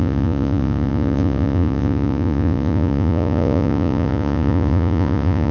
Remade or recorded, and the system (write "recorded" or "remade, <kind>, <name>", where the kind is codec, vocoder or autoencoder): remade, vocoder, Vocos